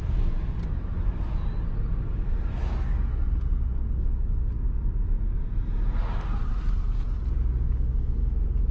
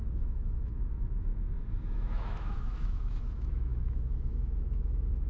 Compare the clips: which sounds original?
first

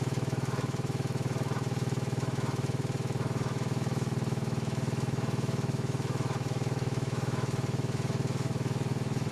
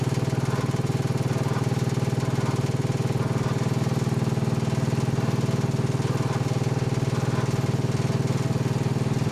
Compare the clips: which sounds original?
second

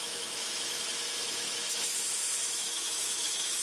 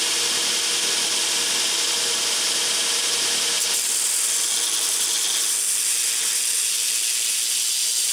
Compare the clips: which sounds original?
second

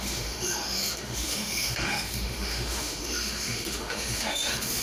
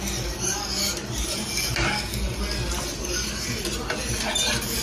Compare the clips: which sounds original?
second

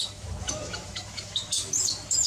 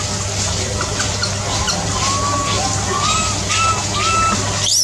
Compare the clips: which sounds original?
second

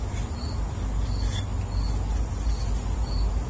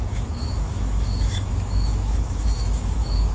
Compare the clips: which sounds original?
first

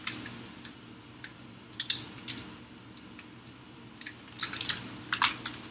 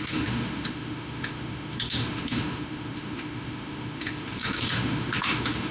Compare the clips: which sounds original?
first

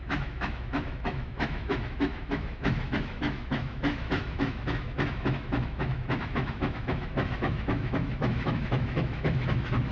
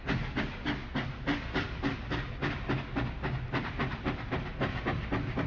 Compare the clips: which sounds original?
second